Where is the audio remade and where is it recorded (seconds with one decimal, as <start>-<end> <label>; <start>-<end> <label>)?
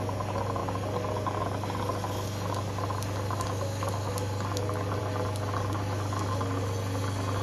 0.0-7.4 recorded